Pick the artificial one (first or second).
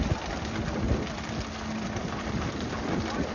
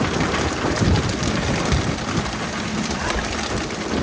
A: second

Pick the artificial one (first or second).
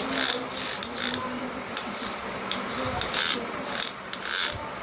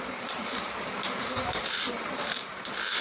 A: second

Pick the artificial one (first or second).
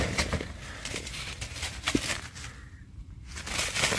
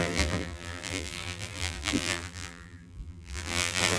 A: second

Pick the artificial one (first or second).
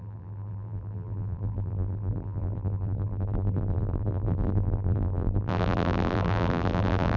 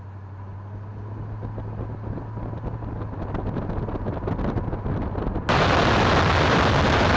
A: first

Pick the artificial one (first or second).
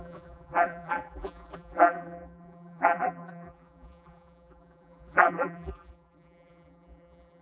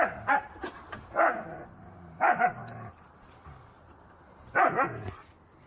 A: first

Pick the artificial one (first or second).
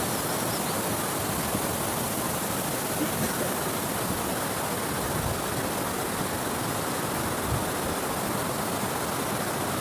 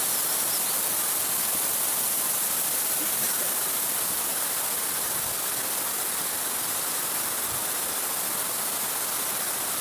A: second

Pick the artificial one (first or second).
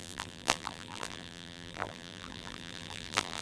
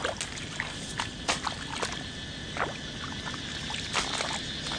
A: first